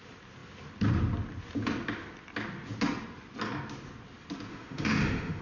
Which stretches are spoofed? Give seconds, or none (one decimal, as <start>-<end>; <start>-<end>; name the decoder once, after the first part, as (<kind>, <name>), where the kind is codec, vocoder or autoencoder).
4.5-5.4 (autoencoder, DAC-VAE)